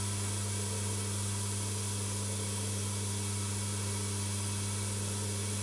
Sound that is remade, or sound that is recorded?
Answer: recorded